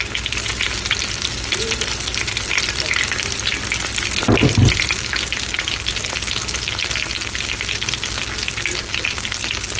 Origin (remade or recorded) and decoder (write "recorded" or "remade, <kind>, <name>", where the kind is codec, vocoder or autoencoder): recorded